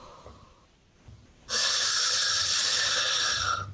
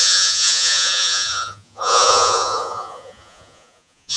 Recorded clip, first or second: first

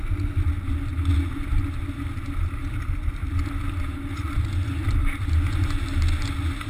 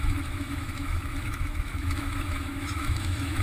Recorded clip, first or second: first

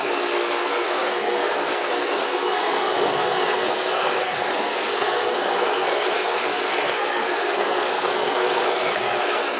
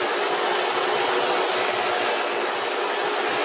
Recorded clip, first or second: second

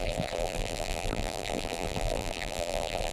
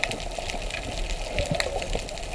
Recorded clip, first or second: second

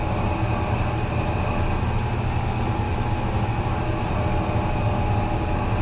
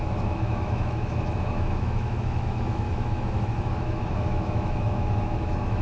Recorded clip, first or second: first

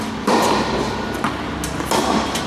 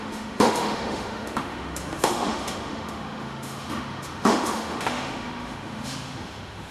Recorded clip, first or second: first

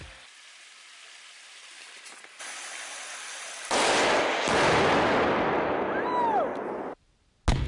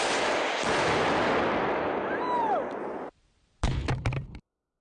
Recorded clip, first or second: first